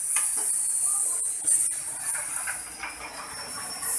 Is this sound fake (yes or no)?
no